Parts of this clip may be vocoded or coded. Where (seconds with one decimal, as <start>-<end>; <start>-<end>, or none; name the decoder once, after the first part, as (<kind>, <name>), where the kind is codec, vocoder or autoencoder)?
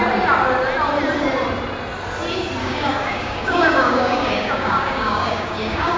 2.6-6.0 (codec, DAC)